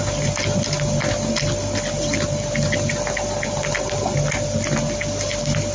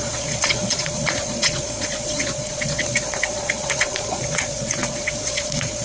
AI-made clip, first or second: second